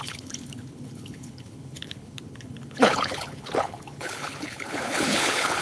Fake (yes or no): yes